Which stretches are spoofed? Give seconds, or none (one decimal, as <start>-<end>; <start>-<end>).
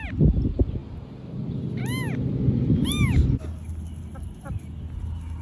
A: none